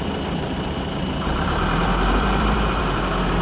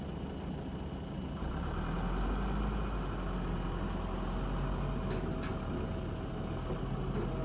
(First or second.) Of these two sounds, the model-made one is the first